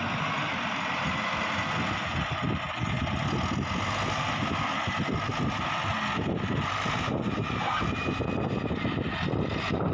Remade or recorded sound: recorded